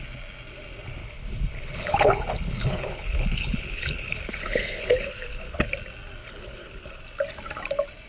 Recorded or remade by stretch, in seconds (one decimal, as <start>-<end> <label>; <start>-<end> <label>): 0.0-1.0 recorded; 1.0-5.6 remade; 5.6-6.2 recorded; 6.2-7.0 remade; 7.0-8.1 recorded